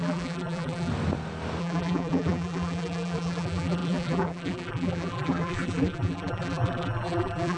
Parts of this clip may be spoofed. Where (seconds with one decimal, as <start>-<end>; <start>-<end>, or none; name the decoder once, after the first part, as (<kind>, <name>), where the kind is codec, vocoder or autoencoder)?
0.0-0.9 (vocoder, BigVGAN v2); 1.6-7.6